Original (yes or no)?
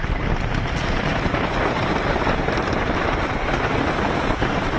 yes